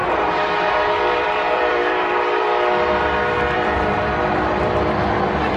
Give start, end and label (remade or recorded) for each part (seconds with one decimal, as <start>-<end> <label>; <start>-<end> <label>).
0.0-5.6 remade